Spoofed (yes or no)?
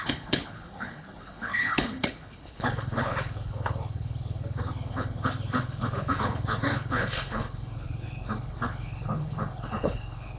yes